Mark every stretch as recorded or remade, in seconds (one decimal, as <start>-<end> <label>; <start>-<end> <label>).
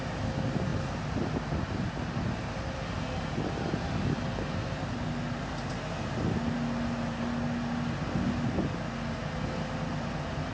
0.0-10.5 recorded